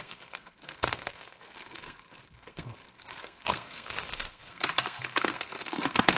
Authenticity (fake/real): fake